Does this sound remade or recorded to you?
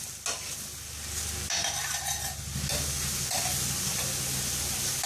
recorded